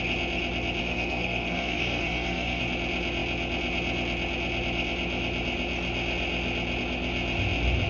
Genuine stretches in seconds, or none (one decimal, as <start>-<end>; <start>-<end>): 0.0-0.8; 2.6-7.9